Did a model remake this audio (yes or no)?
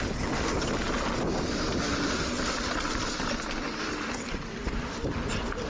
no